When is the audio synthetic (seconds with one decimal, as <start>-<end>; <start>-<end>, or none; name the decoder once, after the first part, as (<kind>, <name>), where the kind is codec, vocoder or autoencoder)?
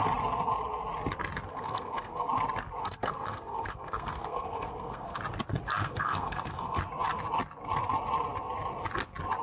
1.5-2.3 (codec, SNAC); 2.8-5.2; 5.8-6.8